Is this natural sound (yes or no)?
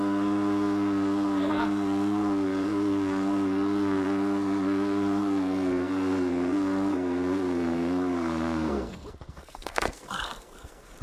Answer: no